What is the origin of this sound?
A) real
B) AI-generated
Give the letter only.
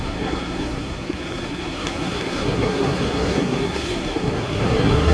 B